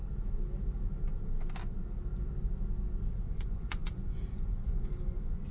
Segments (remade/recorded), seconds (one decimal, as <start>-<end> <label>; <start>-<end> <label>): 0.0-3.2 recorded; 3.2-5.5 remade